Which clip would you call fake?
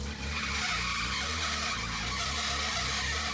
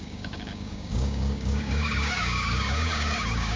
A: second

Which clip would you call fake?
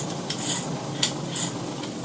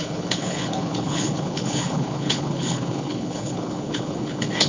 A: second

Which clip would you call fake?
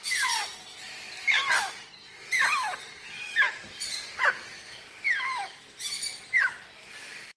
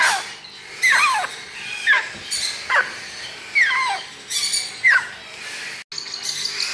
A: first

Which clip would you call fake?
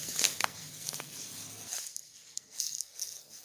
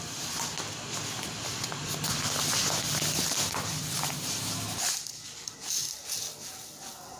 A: first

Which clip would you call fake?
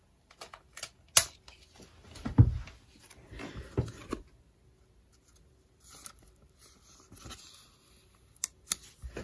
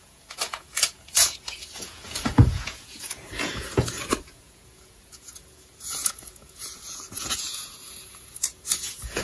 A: second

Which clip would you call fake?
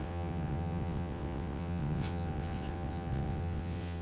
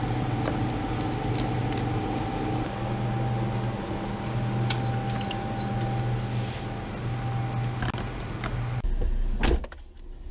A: first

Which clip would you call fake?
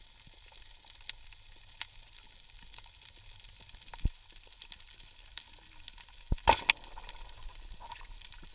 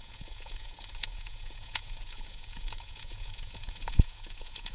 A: second